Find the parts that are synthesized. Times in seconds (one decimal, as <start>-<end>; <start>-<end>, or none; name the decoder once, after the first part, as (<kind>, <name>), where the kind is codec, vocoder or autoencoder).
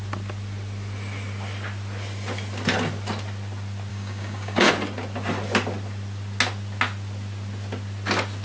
3.9-4.7 (codec, DAC)